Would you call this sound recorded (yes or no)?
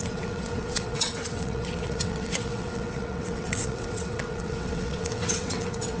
no